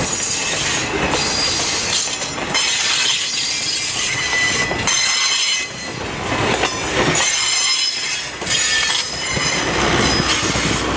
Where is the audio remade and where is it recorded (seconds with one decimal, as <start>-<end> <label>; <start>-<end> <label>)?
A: 0.0-11.0 recorded